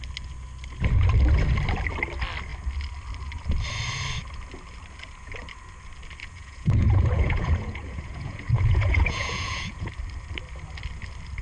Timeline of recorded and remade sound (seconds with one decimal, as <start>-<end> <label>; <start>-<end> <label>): 0.0-6.2 recorded; 6.2-9.9 remade; 9.9-11.4 recorded